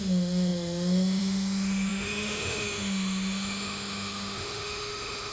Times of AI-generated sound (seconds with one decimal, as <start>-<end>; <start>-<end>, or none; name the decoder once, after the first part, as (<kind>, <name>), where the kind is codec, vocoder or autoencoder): 0.0-5.3 (autoencoder, DAC-VAE)

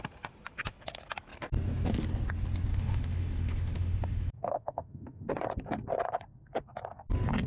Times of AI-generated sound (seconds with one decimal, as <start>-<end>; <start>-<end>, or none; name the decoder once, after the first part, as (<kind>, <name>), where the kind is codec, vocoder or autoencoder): 2.7-5.2 (autoencoder, DAC-VAE)

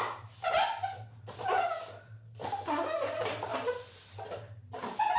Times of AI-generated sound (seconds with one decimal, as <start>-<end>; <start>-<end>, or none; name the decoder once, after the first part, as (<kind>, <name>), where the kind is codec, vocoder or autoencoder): none

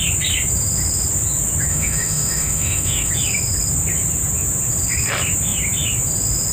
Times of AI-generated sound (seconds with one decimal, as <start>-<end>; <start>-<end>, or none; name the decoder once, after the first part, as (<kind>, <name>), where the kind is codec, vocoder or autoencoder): 1.7-3.1 (autoencoder, DAC-VAE)

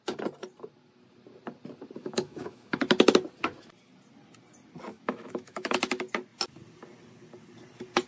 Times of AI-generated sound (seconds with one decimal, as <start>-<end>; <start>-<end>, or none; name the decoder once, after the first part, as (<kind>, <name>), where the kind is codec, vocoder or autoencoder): 2.0-2.8 (autoencoder, DAC-VAE); 4.9-5.8